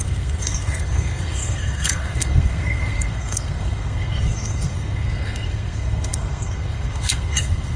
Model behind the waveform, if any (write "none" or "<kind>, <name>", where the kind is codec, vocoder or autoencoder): codec, SNAC